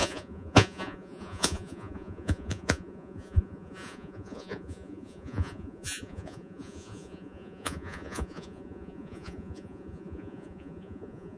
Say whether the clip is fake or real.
fake